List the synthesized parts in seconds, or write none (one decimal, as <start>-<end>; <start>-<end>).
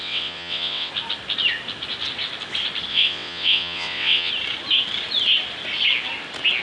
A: 0.0-0.9; 2.9-4.3